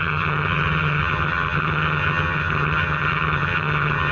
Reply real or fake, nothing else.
fake